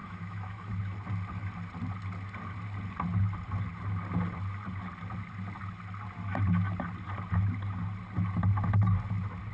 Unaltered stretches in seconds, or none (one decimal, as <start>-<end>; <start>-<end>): 0.8-9.5